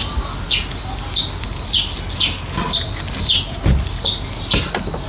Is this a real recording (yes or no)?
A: yes